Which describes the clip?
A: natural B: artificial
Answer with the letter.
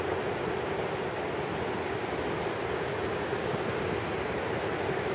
A